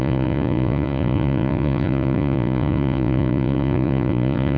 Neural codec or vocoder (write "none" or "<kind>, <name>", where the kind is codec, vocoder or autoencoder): vocoder, Vocos